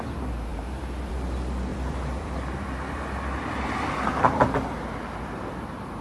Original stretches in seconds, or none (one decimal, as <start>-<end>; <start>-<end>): 0.0-1.7; 4.5-6.0